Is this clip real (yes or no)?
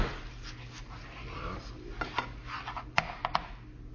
yes